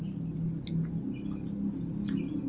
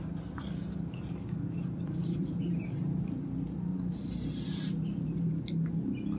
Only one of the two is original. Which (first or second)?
first